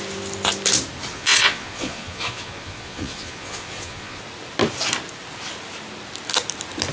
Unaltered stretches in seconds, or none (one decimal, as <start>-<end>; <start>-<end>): 0.0-1.1; 4.2-6.9